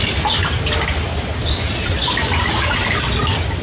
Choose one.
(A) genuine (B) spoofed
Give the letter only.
A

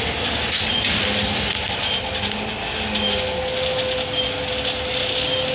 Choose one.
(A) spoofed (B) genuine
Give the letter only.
B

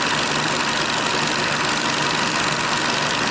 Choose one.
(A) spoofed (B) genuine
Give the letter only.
B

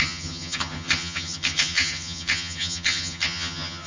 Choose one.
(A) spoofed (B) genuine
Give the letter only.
A